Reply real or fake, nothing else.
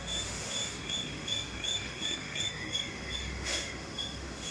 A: fake